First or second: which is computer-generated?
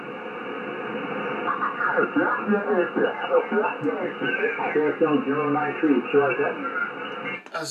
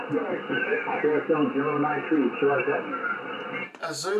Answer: second